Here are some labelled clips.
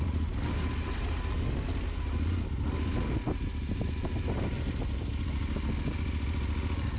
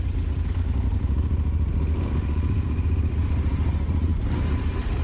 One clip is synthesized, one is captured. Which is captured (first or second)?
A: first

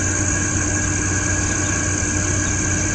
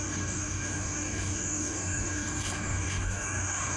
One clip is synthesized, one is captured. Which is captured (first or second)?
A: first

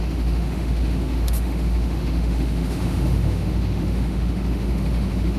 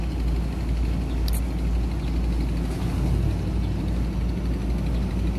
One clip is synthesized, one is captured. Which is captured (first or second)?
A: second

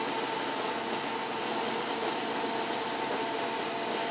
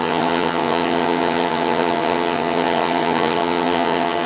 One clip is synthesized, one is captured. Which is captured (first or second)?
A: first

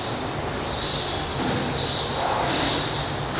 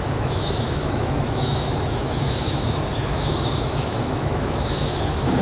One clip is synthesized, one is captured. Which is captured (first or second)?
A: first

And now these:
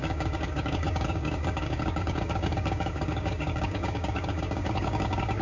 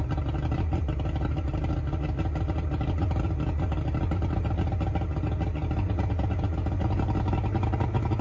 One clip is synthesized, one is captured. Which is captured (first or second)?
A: second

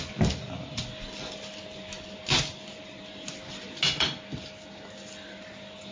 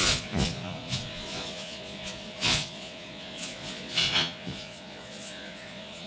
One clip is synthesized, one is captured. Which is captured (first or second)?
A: first